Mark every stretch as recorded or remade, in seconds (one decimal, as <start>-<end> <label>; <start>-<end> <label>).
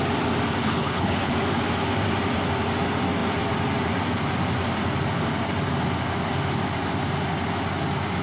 0.0-0.6 recorded; 0.6-1.3 remade; 1.3-8.2 recorded